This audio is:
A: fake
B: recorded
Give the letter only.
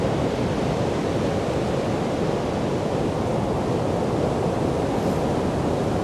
B